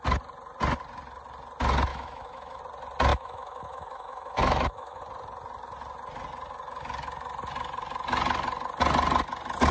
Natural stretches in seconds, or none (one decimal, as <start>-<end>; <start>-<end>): 0.0-1.9; 2.6-3.1; 5.0-9.7